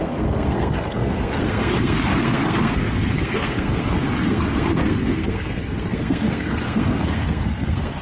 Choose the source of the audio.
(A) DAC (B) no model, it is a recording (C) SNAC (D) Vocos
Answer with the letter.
C